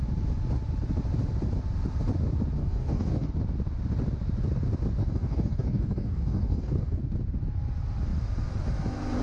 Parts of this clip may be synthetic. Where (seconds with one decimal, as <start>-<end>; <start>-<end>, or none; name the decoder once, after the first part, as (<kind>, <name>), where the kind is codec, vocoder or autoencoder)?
2.6-3.3 (codec, DAC); 5.0-7.0